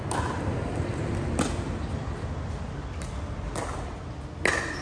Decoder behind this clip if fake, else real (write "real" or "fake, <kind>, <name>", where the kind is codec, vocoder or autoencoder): real